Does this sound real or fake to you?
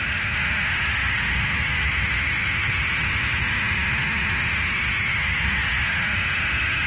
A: real